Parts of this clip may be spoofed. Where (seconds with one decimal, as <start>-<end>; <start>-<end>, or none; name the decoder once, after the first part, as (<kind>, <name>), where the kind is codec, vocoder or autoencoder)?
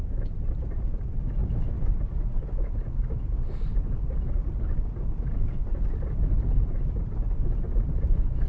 0.0-1.4 (vocoder, BigVGAN v2); 3.0-4.4; 5.0-8.5